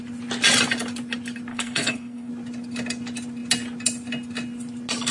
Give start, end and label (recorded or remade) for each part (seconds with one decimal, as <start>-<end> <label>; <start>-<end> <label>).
0.0-1.5 recorded; 1.5-2.3 remade; 2.3-5.1 recorded